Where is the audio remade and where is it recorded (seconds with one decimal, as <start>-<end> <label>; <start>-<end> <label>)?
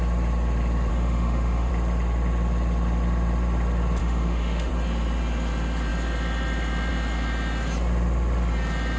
0.0-0.9 recorded; 0.9-1.7 remade; 1.7-4.0 recorded; 4.0-4.7 remade; 4.7-9.0 recorded